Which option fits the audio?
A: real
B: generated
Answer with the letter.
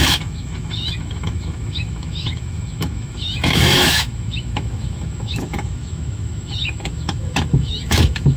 B